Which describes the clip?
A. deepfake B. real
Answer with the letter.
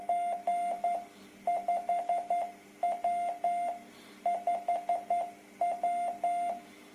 B